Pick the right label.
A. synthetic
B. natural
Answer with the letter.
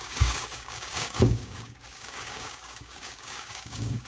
A